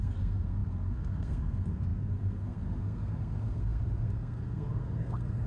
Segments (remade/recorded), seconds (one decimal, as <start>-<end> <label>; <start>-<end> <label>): 0.0-5.5 remade